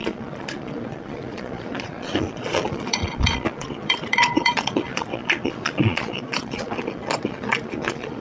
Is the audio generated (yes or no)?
yes